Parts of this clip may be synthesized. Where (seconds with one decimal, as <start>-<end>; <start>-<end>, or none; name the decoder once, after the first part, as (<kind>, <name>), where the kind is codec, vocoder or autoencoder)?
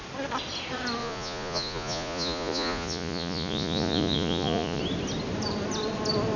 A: 1.0-4.8 (vocoder, Vocos)